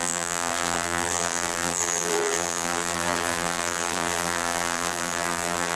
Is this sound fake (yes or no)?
yes